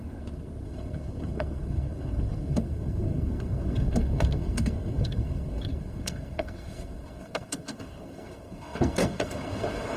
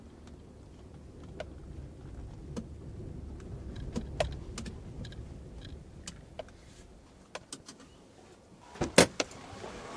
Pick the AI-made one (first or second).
first